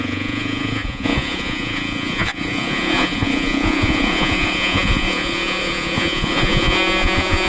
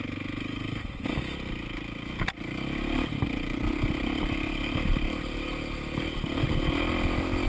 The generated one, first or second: first